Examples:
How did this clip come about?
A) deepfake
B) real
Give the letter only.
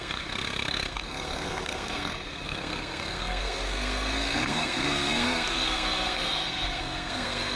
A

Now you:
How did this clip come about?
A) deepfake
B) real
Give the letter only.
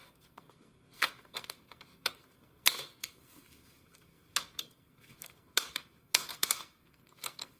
A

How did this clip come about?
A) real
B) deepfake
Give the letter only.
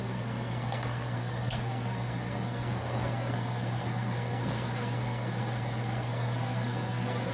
B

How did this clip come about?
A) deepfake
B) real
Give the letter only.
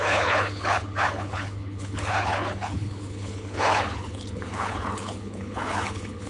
A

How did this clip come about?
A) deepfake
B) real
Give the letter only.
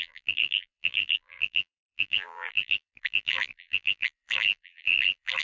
A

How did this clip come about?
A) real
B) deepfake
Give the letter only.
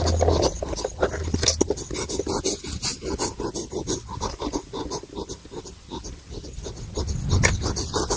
A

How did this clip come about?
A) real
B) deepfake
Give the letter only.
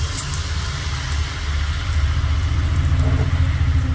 A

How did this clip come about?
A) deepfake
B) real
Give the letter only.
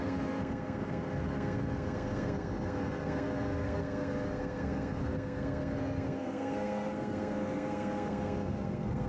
A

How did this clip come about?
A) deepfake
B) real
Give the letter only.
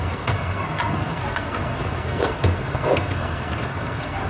A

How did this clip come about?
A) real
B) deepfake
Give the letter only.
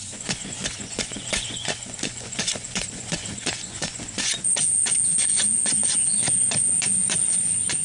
B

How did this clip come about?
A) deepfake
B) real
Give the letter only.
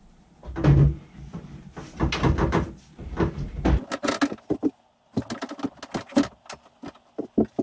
B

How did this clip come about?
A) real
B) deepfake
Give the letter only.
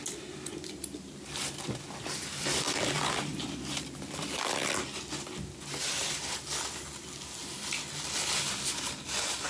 A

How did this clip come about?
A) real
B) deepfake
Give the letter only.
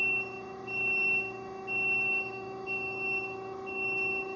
B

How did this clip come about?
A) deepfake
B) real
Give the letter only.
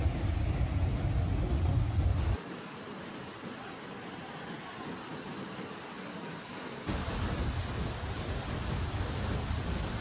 B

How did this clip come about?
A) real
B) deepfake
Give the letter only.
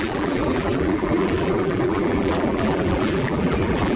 B